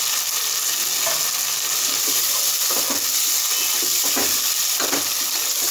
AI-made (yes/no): no